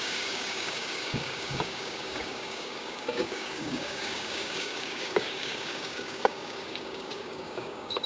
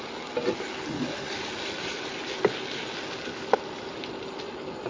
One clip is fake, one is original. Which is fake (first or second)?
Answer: first